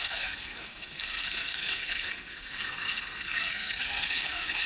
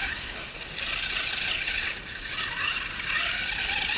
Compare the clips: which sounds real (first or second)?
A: second